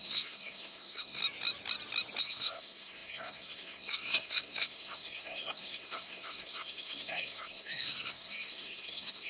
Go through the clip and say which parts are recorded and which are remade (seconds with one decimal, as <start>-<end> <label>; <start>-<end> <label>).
0.0-1.2 remade; 1.2-2.2 recorded; 2.2-9.3 remade